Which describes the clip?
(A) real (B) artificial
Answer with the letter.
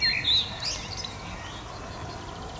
A